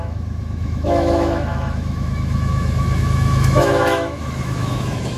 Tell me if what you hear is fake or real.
fake